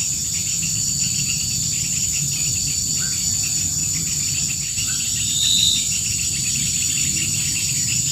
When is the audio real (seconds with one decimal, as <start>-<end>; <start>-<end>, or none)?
0.0-0.4; 2.9-3.8; 6.5-8.1